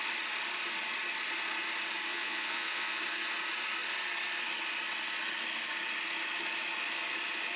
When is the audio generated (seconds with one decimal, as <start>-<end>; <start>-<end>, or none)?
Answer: 2.1-3.0